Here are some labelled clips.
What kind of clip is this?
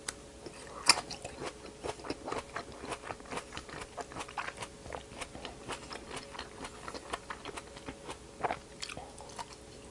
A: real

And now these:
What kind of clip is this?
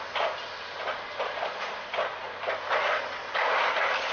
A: real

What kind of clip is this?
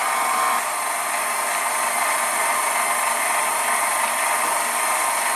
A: real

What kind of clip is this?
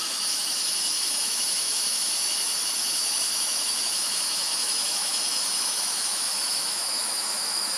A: fake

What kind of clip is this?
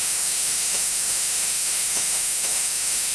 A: fake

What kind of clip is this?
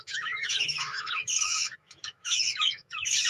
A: fake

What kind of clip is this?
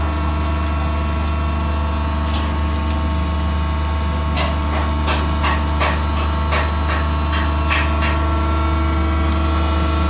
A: real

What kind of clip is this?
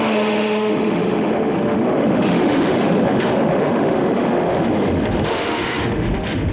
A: fake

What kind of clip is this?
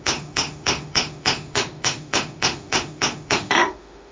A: fake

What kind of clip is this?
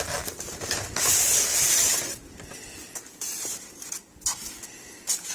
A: real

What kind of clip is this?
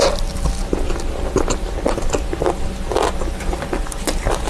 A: real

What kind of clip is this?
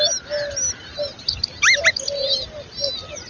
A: real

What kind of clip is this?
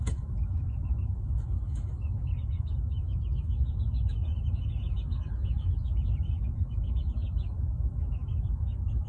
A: fake